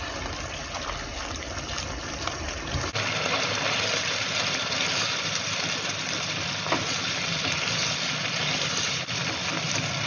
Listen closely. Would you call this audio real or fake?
real